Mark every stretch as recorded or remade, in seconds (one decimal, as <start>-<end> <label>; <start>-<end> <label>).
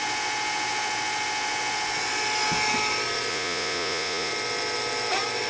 0.0-3.3 recorded; 3.3-4.3 remade; 4.3-5.5 recorded